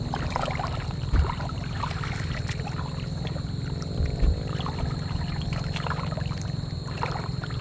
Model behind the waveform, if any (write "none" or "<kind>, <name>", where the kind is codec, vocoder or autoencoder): vocoder, BigVGAN v2